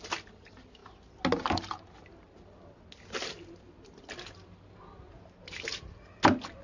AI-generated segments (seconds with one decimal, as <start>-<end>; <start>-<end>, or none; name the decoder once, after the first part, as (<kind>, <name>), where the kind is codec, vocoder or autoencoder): none